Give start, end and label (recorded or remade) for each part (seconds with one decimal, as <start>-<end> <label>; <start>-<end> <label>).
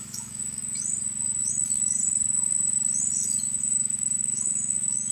0.0-0.6 remade; 0.6-1.5 recorded; 1.5-2.0 remade; 2.0-3.4 recorded; 3.4-5.1 remade